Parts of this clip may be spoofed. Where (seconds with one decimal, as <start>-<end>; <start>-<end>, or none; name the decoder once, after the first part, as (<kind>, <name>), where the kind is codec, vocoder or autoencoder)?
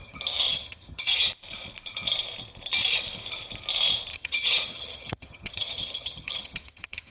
0.0-1.3 (vocoder, HiFi-GAN); 4.1-7.1